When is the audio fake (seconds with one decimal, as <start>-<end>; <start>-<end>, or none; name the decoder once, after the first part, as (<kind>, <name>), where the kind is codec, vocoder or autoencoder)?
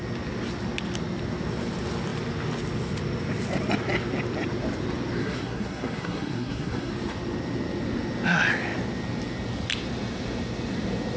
5.2-6.9 (codec, SNAC)